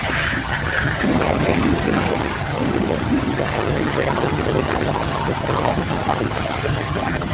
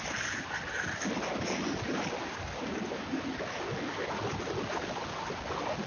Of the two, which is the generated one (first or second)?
first